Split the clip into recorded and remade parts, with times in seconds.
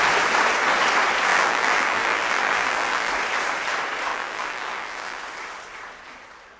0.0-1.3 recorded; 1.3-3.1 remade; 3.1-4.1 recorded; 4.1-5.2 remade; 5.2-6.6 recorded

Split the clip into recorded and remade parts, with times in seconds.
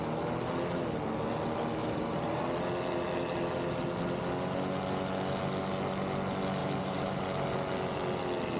0.0-1.8 recorded; 1.8-2.4 remade; 2.4-6.6 recorded; 6.6-7.2 remade; 7.2-8.6 recorded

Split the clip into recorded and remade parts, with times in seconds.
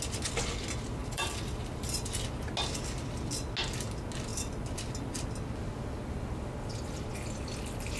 0.0-1.0 recorded; 1.0-2.3 remade; 2.3-4.3 recorded; 4.3-5.2 remade; 5.2-8.0 recorded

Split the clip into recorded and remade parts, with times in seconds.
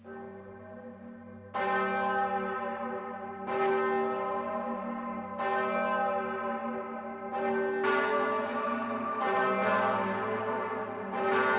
0.0-11.6 recorded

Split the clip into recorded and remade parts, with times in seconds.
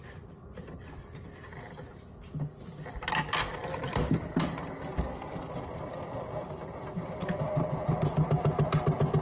0.0-9.2 recorded